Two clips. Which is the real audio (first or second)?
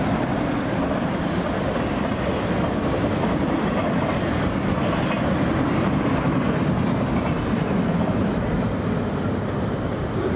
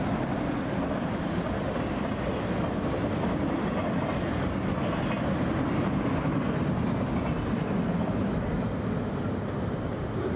second